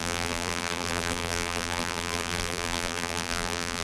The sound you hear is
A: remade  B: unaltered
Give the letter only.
A